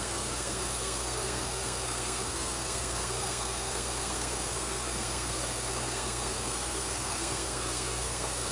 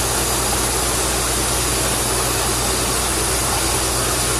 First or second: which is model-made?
first